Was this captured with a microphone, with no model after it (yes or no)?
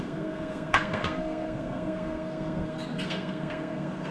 no